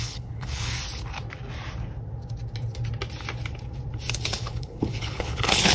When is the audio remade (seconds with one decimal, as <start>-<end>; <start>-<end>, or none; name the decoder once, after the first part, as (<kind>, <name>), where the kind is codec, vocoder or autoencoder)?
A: 0.0-0.7 (codec, HILCodec); 4.1-5.7